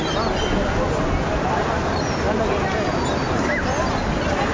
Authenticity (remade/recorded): recorded